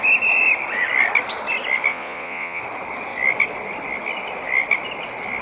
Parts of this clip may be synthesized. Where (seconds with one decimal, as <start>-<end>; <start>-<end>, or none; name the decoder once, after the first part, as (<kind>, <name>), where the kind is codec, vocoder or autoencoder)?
1.9-2.6 (vocoder, Vocos)